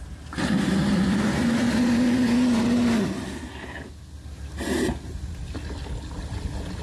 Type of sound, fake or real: real